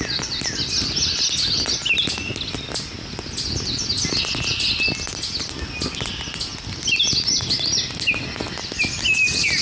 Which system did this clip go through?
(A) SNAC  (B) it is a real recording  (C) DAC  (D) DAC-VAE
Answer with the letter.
B